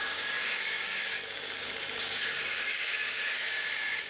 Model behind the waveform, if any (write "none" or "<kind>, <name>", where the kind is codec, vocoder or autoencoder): codec, DAC